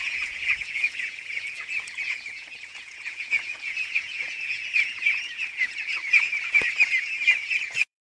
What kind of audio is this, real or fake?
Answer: fake